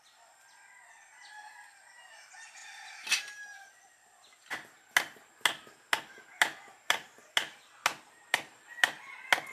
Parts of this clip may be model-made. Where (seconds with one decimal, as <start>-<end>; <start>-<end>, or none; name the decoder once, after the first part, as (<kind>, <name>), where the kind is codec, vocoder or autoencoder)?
none